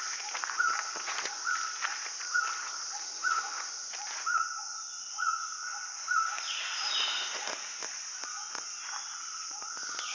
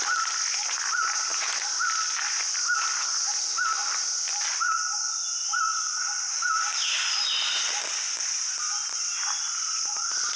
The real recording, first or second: second